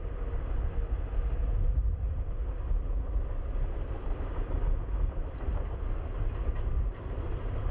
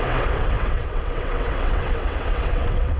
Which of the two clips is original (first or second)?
first